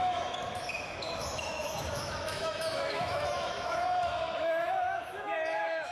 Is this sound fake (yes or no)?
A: yes